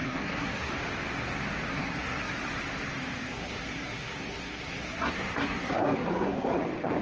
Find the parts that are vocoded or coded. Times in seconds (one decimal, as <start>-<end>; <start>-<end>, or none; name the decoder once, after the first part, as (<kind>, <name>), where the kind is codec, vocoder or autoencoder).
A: 0.0-0.7 (codec, SNAC); 1.7-2.3; 3.2-6.6